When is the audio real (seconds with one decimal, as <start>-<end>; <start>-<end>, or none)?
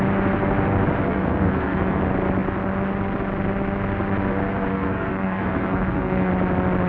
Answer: 0.0-1.1; 2.0-4.7; 6.3-6.9